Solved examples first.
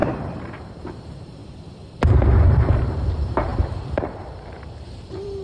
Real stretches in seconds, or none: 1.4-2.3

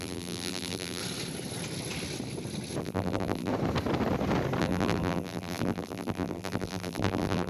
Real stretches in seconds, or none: 1.0-2.8; 3.5-4.6

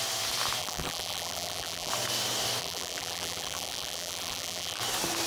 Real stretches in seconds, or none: 0.0-0.6; 1.9-2.6; 4.8-5.3

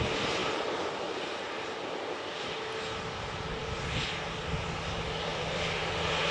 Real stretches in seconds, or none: 0.0-0.4; 1.2-3.6; 4.2-5.3